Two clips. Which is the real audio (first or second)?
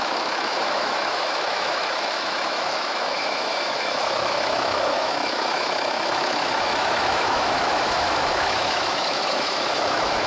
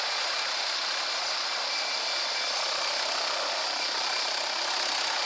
second